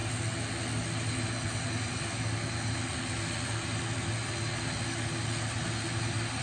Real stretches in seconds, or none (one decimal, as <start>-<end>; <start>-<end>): 0.0-6.4